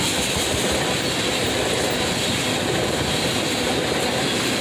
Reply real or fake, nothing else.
real